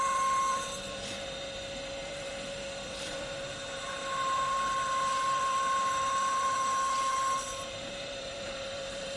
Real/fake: fake